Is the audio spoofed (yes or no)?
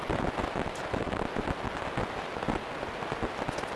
no